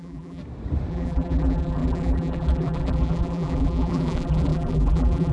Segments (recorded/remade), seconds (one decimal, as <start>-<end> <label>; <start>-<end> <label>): 0.0-0.4 remade; 0.4-0.9 recorded; 0.9-5.3 remade